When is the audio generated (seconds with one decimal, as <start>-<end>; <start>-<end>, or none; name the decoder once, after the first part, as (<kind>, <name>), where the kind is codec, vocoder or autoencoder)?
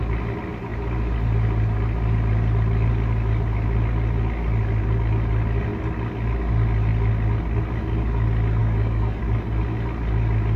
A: 8.6-9.2 (codec, DAC)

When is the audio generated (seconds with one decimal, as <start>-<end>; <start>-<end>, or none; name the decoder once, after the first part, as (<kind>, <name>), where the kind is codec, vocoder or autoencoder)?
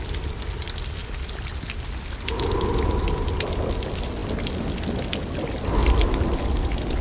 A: none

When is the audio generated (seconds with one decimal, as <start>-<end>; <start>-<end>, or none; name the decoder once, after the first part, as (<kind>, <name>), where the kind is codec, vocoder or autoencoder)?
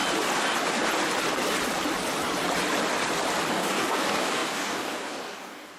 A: 3.5-5.8 (codec, DAC)